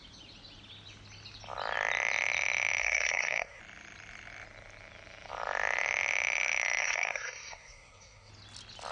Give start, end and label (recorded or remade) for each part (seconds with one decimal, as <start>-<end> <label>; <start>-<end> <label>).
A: 0.0-2.8 recorded; 2.8-3.6 remade; 3.6-6.8 recorded; 6.8-8.3 remade; 8.3-8.9 recorded

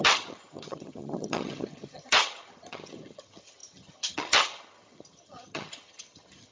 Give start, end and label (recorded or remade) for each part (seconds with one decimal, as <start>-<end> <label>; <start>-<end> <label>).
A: 0.0-6.5 remade

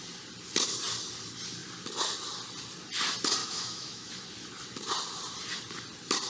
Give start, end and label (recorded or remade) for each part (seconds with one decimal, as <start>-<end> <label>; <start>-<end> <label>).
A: 0.0-3.4 recorded; 3.4-4.1 remade; 4.1-6.3 recorded

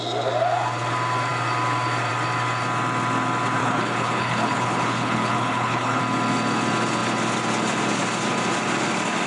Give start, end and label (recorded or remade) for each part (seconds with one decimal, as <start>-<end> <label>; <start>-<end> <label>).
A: 0.0-3.6 recorded; 3.6-6.0 remade; 6.0-9.3 recorded